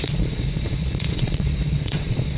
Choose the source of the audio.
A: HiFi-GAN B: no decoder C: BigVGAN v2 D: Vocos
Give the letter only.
D